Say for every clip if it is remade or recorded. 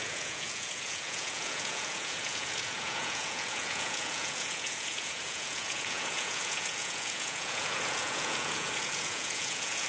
remade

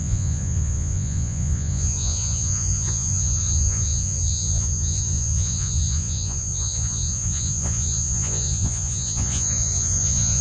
remade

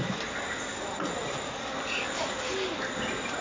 recorded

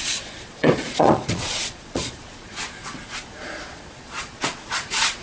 remade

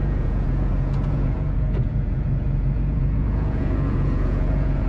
remade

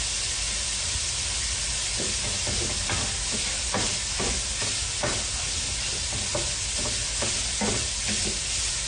recorded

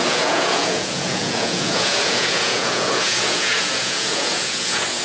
remade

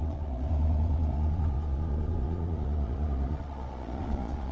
remade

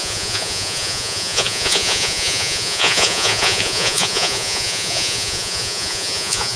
remade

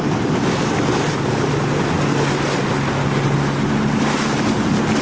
recorded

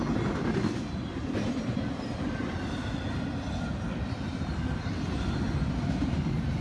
recorded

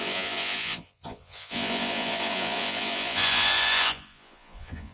remade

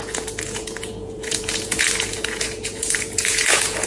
remade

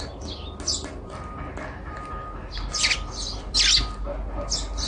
recorded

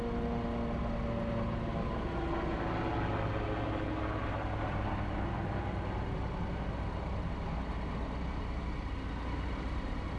recorded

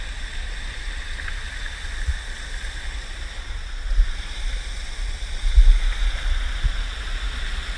recorded